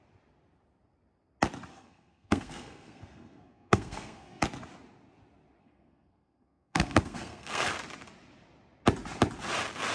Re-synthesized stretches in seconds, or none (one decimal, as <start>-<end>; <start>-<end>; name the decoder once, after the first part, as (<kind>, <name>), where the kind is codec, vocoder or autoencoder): 1.7-4.4 (codec, SNAC); 5.6-7.7